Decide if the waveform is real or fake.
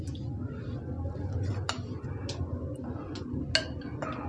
real